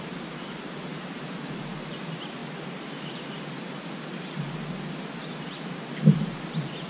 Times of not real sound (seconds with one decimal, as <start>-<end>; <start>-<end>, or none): none